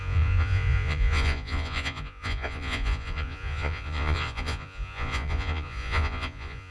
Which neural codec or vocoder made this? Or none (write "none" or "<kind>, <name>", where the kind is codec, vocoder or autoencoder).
vocoder, Vocos